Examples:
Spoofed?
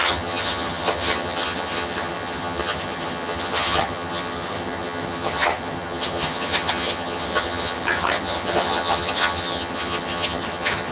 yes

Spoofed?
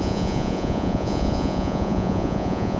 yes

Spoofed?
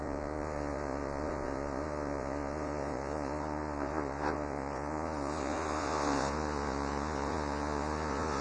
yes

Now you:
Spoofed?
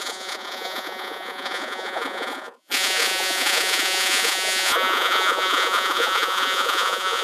yes